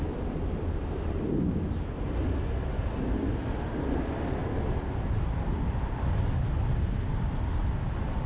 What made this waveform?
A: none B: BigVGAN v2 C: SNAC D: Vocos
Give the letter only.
A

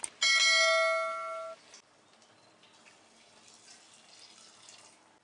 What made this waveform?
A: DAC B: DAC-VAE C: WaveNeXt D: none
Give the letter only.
D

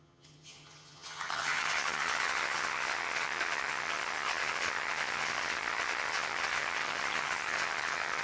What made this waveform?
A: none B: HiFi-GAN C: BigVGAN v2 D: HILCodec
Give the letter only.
B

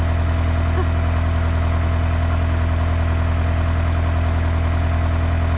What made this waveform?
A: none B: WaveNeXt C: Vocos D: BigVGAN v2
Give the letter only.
A